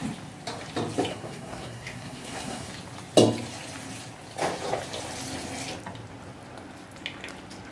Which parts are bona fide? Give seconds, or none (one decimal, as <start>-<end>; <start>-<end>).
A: 0.0-1.1; 2.7-7.7